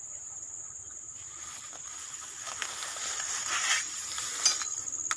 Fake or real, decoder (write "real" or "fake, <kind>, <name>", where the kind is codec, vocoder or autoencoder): real